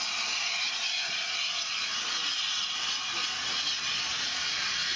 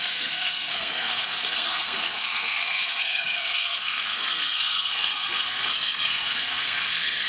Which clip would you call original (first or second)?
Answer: first